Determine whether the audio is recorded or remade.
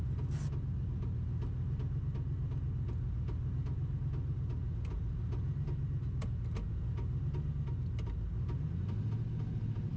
recorded